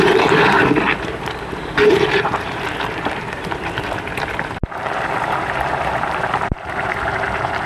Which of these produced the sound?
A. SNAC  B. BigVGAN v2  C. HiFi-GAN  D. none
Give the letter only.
B